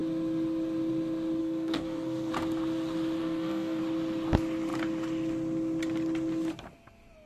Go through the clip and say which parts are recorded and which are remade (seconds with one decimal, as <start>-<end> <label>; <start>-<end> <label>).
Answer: 0.0-1.4 recorded; 1.4-2.3 remade; 2.3-3.2 recorded; 3.2-3.8 remade; 3.8-7.3 recorded